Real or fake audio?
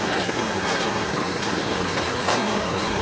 fake